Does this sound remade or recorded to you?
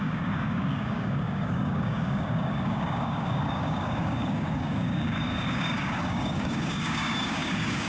remade